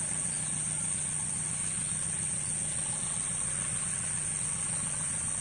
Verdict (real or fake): real